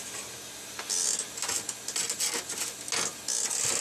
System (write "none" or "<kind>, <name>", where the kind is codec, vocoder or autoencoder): none